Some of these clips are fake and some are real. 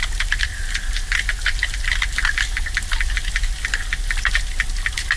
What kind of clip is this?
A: real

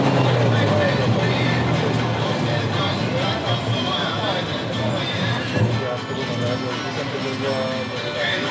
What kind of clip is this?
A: real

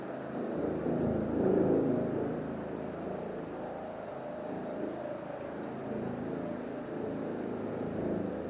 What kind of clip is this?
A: real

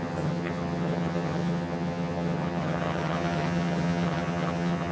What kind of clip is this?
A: fake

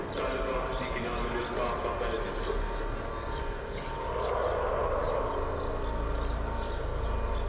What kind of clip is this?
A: real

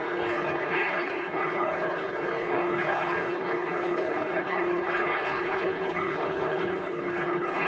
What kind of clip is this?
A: fake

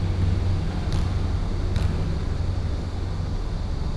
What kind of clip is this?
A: real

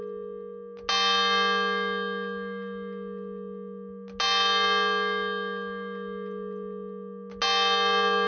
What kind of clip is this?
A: real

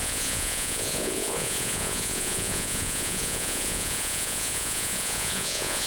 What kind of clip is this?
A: fake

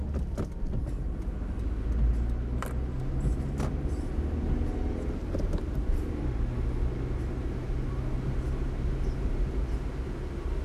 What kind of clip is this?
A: real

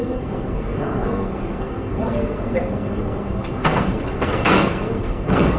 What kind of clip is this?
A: fake